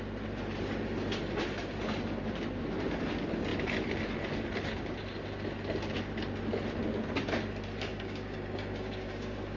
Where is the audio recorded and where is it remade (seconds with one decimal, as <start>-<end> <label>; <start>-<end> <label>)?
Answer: 0.0-7.9 recorded; 7.9-9.6 remade